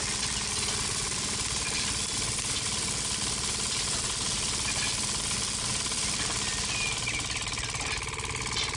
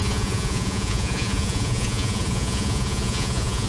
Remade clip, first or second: second